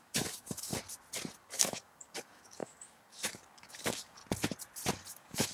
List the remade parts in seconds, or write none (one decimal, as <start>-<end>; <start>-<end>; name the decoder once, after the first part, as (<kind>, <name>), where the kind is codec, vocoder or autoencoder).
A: 0.0-0.7 (codec, DAC); 1.4-4.2; 5.1-5.5